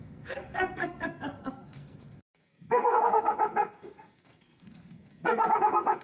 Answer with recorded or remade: remade